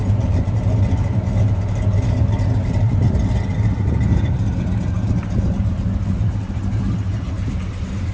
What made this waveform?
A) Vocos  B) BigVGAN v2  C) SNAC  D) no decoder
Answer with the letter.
B